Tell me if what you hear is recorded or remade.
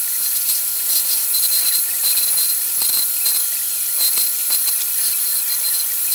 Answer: remade